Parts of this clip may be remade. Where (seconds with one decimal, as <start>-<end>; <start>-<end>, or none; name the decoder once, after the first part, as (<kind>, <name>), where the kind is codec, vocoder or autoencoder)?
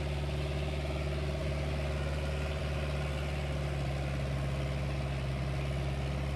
none